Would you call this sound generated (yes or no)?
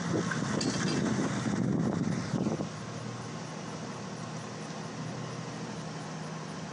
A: no